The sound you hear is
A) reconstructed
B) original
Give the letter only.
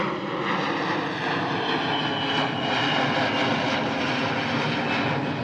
B